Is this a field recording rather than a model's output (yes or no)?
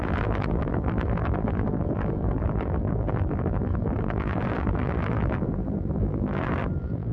no